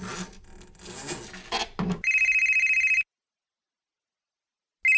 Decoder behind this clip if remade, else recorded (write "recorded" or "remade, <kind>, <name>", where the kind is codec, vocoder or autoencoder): recorded